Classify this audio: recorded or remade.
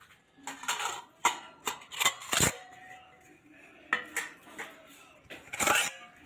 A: recorded